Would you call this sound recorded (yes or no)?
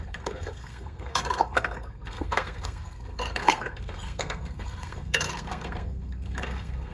no